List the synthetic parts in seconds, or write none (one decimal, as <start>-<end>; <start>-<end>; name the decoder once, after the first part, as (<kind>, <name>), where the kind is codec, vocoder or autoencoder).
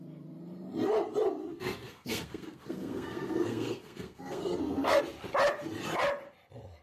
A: 1.4-5.0 (codec, SNAC)